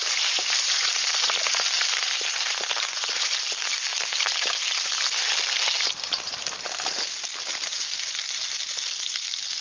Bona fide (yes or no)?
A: no